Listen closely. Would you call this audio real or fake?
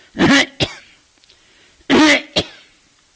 real